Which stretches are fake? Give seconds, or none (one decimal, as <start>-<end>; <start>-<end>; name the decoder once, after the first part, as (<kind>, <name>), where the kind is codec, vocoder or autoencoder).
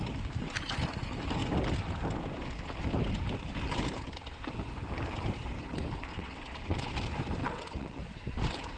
6.1-6.9 (vocoder, WaveNeXt); 7.4-8.0